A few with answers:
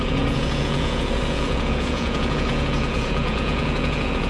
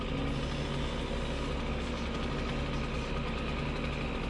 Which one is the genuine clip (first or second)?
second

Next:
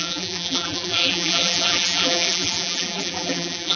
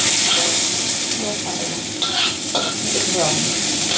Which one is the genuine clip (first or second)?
second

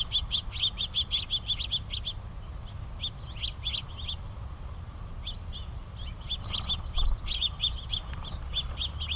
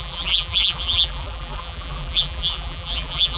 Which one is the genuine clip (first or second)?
first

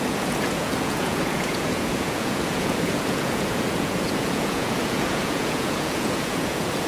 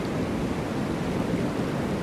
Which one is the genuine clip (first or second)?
second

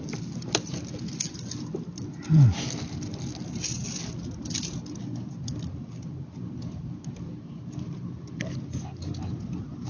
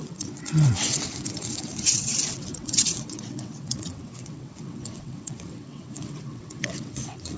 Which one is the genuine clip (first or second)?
first